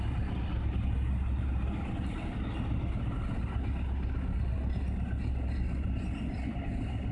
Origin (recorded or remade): recorded